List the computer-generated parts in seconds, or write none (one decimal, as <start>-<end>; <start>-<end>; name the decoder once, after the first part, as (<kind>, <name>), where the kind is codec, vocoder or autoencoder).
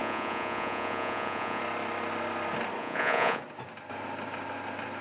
0.0-1.6 (vocoder, Vocos); 2.8-3.4